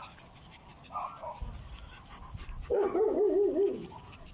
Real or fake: real